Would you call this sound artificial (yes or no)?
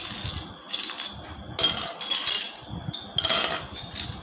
no